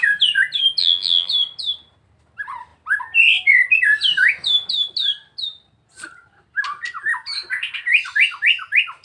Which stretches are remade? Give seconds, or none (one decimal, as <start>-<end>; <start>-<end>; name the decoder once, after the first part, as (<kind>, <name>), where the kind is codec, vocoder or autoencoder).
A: 0.8-1.3 (vocoder, BigVGAN v2)